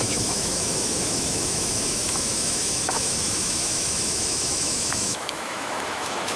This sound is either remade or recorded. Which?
remade